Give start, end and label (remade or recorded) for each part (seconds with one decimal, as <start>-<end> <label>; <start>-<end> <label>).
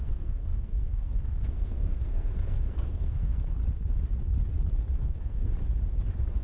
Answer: 0.0-3.6 remade; 3.6-5.0 recorded; 5.0-5.5 remade; 5.5-6.4 recorded